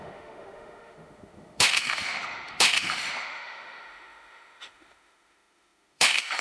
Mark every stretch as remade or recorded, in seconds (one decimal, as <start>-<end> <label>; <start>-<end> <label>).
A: 0.0-6.4 remade